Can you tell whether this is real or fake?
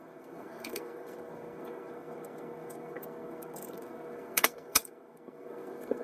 fake